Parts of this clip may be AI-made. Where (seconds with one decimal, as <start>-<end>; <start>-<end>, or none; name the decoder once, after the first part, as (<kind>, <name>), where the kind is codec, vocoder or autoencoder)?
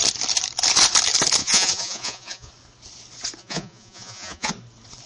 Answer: 1.4-2.5 (vocoder, Vocos); 3.4-4.5